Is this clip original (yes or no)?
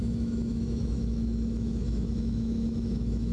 no